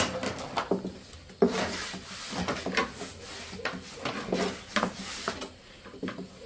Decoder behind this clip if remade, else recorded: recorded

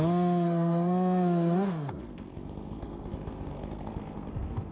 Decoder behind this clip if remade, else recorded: remade, codec, SNAC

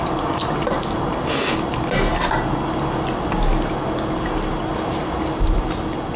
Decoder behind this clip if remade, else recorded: recorded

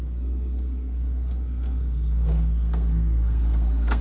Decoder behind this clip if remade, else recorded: remade, codec, SNAC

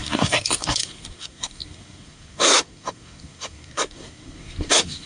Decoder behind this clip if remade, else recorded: remade, codec, SNAC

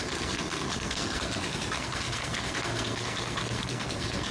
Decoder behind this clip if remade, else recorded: remade, codec, SNAC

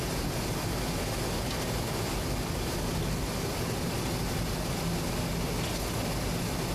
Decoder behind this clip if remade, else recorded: recorded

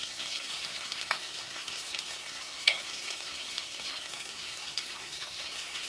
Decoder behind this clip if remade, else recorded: remade, codec, SNAC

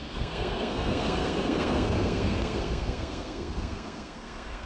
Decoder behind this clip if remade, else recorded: remade, codec, SNAC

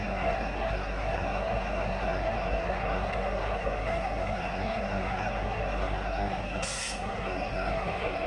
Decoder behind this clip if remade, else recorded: remade, codec, SNAC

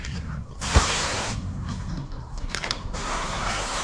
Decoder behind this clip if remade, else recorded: remade, codec, SNAC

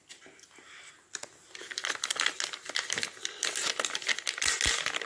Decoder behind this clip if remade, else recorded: recorded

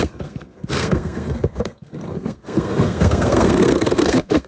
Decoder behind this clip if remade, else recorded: remade, codec, SNAC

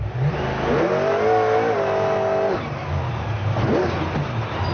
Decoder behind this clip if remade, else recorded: recorded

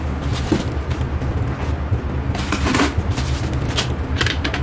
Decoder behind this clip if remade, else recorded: recorded